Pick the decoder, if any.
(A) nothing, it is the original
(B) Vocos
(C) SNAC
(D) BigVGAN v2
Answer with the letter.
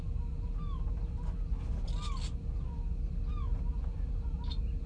A